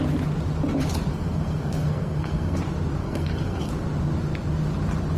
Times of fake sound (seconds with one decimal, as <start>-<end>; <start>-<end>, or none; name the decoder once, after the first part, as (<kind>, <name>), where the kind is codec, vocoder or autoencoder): 1.1-2.6 (codec, SNAC); 3.0-3.7